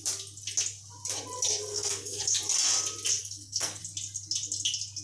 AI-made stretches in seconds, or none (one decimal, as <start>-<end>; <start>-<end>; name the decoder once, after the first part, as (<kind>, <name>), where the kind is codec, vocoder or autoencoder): 1.7-2.3 (codec, SNAC); 3.2-3.8